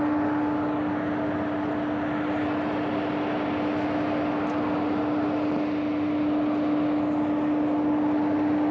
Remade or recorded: recorded